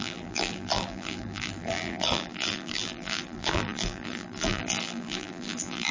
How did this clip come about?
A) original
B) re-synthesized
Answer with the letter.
B